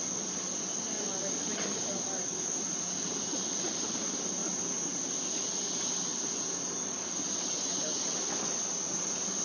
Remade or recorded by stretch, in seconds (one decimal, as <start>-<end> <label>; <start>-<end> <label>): 0.0-9.4 recorded